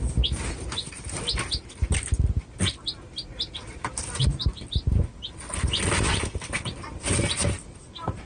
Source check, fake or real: real